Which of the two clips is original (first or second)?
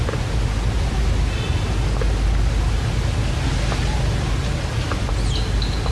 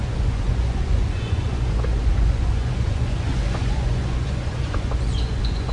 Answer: first